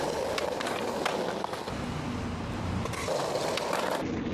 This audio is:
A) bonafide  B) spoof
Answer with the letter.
A